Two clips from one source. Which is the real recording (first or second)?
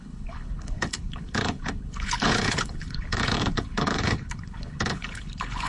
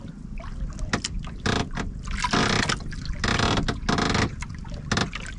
second